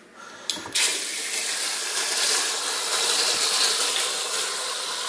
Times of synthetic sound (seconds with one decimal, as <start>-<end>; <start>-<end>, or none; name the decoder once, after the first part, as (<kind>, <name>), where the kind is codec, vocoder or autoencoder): none